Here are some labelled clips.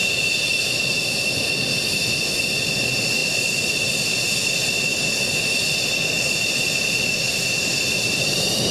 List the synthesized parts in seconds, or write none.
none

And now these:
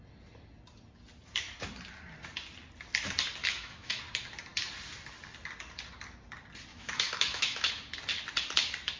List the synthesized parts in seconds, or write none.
3.4-4.0 (autoencoder, DAC-VAE); 6.7-7.7

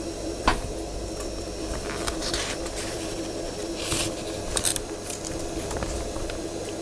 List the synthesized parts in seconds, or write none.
0.0-6.8 (vocoder, BigVGAN v2)